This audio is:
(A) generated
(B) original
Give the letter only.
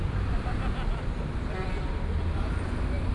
B